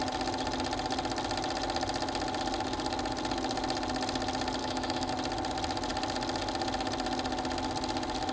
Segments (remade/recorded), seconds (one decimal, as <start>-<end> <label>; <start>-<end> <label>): 0.0-4.6 recorded; 4.6-5.1 remade; 5.1-8.3 recorded